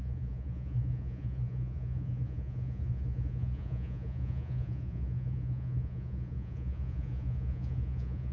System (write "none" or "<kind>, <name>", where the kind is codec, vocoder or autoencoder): vocoder, Vocos